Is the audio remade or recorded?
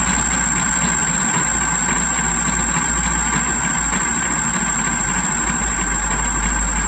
recorded